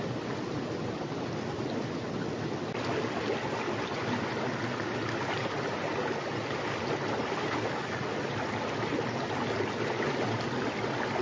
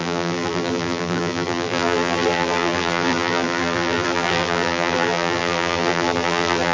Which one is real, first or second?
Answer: first